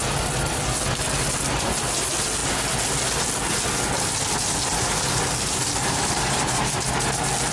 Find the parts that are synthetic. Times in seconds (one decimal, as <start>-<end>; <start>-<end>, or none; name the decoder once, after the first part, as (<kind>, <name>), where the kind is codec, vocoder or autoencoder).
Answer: none